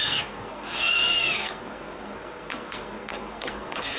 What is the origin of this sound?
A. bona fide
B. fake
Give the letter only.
B